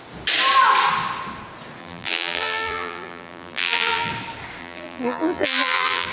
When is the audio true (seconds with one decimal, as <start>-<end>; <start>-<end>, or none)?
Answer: 0.0-1.8; 4.1-4.6